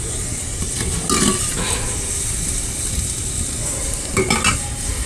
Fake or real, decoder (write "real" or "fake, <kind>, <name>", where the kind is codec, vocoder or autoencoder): real